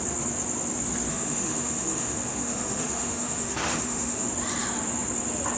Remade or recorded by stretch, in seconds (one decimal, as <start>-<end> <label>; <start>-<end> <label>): 0.0-1.1 recorded; 1.1-4.3 remade; 4.3-5.6 recorded